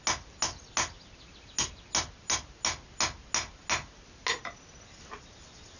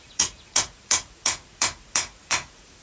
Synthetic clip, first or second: second